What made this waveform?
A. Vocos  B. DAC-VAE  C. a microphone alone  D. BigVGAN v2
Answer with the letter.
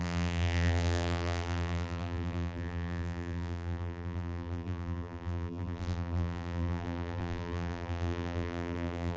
D